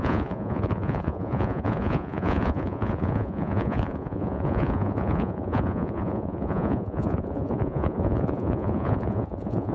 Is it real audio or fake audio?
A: fake